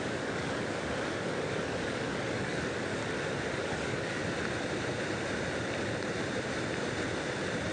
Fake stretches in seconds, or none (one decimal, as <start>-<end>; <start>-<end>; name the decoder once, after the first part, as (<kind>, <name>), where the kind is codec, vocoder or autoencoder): 0.0-3.0 (codec, DAC); 3.5-4.2